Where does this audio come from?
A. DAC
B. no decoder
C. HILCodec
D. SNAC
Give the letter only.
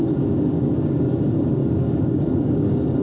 A